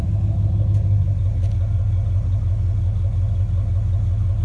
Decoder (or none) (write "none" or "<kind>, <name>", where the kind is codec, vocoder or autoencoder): none